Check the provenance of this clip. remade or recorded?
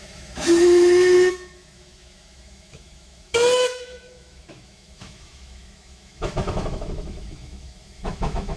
remade